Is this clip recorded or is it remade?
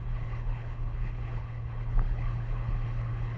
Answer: remade